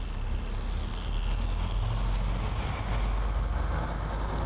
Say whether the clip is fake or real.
real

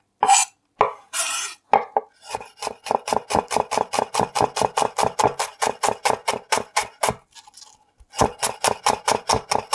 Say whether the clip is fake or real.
real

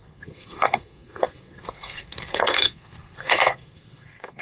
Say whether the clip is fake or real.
fake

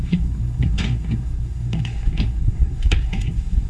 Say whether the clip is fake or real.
fake